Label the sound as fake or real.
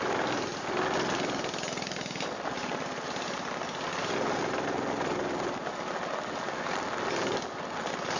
real